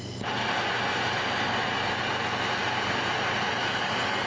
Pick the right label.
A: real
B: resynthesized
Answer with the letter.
A